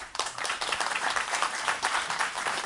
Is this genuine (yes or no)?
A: no